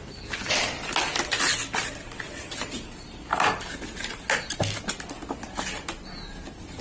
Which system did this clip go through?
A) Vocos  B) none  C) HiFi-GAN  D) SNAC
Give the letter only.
B